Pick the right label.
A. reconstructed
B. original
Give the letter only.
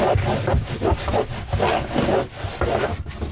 B